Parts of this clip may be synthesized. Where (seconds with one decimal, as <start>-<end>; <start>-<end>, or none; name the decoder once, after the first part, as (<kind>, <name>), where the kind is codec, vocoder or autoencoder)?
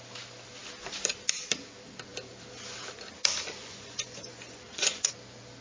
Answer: 3.6-5.1 (vocoder, Vocos)